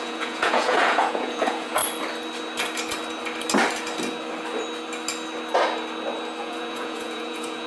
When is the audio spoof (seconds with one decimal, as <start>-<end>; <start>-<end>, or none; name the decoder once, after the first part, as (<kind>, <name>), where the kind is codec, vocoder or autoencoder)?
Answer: 0.0-1.8 (vocoder, Vocos); 6.4-7.7